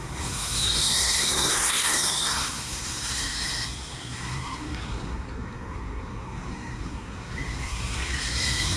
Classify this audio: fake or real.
fake